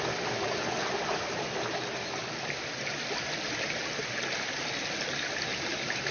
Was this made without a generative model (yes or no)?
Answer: yes